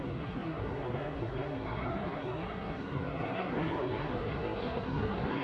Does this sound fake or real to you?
fake